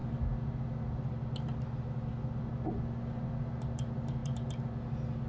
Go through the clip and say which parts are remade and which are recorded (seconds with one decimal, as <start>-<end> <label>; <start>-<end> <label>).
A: 0.0-5.3 recorded